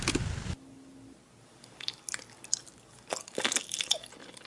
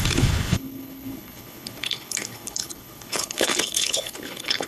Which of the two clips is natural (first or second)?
first